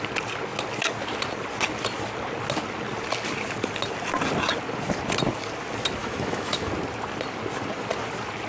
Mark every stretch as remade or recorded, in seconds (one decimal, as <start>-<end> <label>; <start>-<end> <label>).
0.0-6.0 recorded; 6.0-6.7 remade; 6.7-8.5 recorded